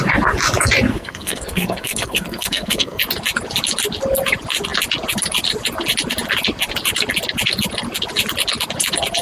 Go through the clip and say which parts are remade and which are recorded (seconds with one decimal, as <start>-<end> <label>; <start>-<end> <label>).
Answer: 0.0-0.9 recorded; 0.9-3.0 remade; 3.0-9.2 recorded